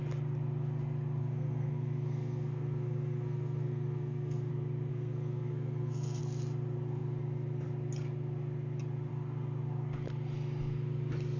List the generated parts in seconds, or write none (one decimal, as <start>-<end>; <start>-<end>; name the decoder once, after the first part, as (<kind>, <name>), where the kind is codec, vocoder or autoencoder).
1.2-4.5 (codec, SNAC); 4.9-6.2